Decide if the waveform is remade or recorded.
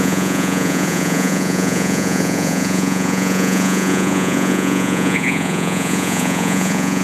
remade